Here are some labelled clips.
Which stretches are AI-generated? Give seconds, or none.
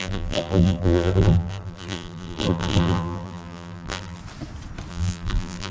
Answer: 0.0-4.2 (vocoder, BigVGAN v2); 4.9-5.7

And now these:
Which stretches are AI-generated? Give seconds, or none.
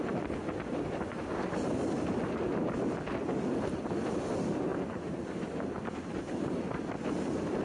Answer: 4.7-5.2 (vocoder, BigVGAN v2)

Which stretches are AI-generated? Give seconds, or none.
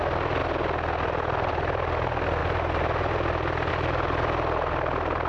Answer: none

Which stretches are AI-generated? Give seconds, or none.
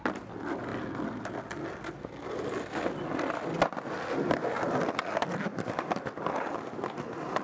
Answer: none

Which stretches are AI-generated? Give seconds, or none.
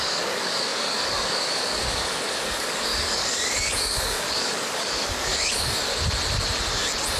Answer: 0.0-5.9 (codec, DAC)